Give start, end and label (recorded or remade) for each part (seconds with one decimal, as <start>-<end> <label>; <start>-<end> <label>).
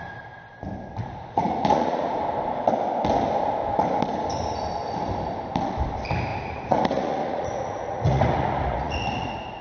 0.0-1.0 recorded; 1.0-2.2 remade; 2.2-6.3 recorded; 6.3-9.6 remade